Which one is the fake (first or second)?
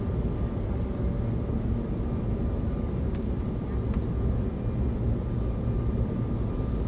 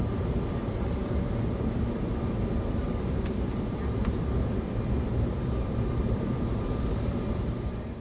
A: second